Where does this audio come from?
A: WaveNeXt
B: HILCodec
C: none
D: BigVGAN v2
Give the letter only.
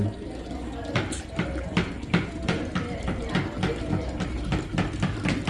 C